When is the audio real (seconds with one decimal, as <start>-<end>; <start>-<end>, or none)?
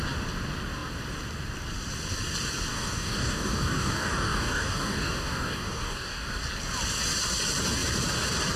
0.0-2.7; 6.4-8.6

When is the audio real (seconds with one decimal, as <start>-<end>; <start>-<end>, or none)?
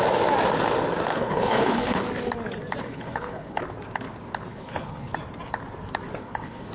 0.0-1.1; 2.0-2.8; 3.6-4.5; 5.1-6.2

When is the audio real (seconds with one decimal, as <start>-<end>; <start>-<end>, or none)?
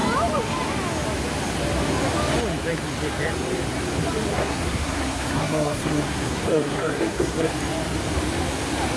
0.0-4.3; 7.5-9.0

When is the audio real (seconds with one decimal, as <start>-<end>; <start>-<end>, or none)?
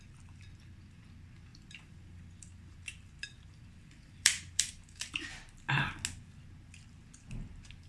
0.0-1.5; 5.0-7.9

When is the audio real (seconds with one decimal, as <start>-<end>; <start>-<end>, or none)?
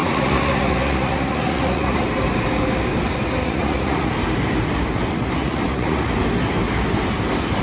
2.1-3.4; 4.1-5.4; 6.0-7.6